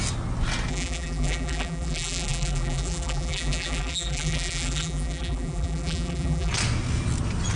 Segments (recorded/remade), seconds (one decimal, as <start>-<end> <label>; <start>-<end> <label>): 0.0-0.7 recorded; 0.7-6.5 remade; 6.5-7.6 recorded